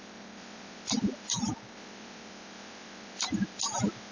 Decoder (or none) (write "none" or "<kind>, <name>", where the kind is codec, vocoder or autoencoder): none